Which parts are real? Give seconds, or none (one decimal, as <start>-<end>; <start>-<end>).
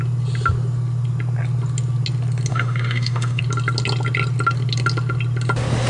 0.0-2.5; 3.4-5.9